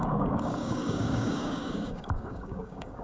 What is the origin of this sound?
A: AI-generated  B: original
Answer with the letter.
A